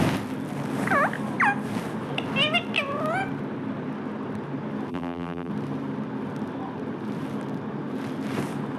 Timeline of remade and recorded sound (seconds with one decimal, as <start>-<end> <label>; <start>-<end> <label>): 0.0-4.9 recorded; 4.9-5.5 remade; 5.5-8.8 recorded